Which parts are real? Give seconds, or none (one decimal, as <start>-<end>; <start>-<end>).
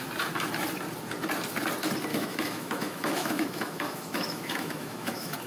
0.0-2.1